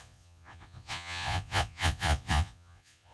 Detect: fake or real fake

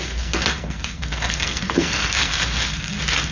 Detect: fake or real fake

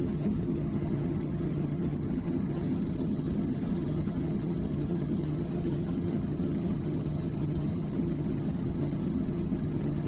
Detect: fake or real fake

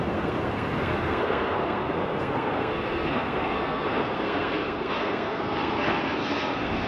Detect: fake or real fake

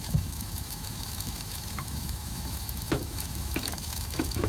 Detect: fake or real fake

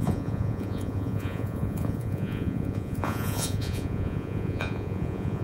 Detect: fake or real fake